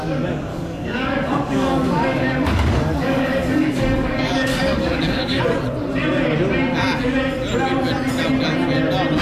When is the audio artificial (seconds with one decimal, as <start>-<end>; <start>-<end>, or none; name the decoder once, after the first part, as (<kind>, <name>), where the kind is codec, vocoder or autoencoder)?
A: 0.5-5.4 (codec, DAC)